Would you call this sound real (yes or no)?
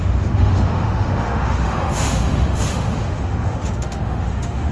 no